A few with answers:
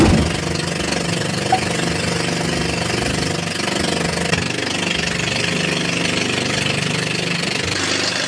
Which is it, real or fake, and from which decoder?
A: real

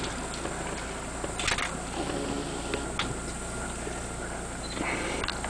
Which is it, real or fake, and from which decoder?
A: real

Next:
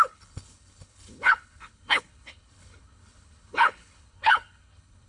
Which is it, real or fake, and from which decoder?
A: fake, codec, HILCodec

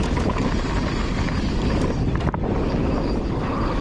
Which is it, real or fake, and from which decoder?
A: real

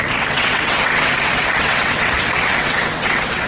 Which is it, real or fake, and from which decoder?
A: fake, vocoder, WaveNeXt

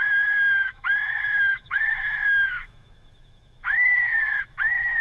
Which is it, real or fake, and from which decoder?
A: fake, autoencoder, DAC-VAE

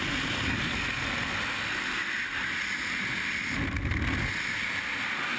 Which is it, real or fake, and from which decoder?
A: real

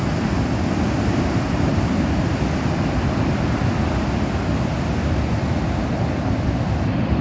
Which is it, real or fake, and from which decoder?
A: real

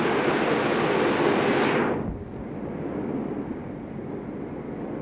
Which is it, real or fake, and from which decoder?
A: real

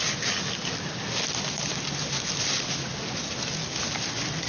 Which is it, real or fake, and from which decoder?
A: real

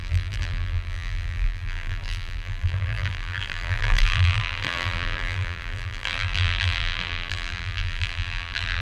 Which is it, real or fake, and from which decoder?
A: fake, vocoder, BigVGAN v2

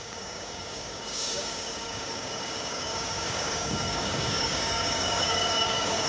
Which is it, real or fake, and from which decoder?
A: fake, codec, DAC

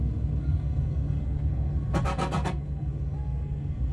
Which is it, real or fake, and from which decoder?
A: fake, codec, SNAC